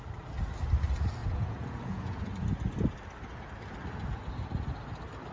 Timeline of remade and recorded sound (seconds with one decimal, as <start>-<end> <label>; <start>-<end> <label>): 0.0-1.2 recorded; 1.2-2.3 remade; 2.3-5.3 recorded